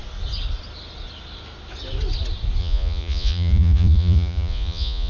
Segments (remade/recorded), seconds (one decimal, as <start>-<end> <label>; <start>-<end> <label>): 0.0-2.6 recorded; 2.6-5.1 remade